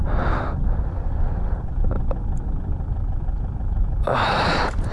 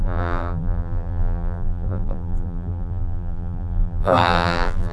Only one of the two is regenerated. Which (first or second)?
second